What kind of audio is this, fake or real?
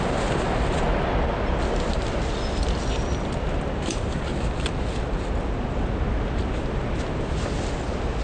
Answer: real